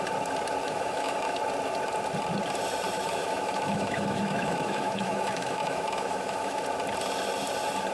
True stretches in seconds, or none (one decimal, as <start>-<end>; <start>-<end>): 0.0-0.6; 1.4-3.2; 6.6-7.9